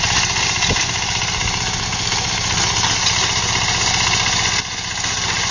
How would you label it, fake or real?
real